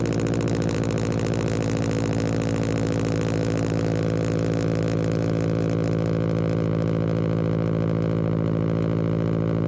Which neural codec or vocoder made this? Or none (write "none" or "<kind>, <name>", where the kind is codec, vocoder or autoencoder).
none